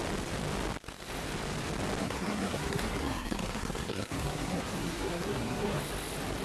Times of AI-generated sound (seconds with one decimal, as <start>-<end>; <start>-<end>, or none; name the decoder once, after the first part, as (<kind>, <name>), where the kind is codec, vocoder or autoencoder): 2.0-5.8 (codec, SNAC)